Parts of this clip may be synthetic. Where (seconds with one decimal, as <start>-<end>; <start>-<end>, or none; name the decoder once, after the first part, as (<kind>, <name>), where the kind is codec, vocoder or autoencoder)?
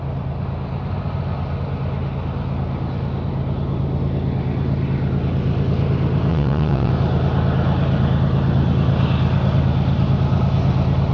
6.3-6.9 (vocoder, WaveNeXt)